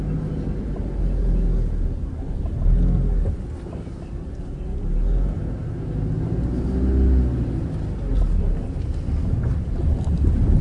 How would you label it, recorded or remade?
recorded